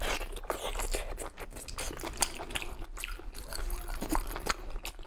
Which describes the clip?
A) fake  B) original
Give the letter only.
B